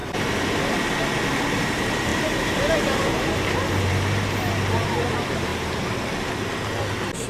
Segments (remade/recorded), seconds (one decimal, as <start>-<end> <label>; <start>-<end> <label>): 0.0-1.3 recorded; 1.3-5.5 remade; 5.5-7.3 recorded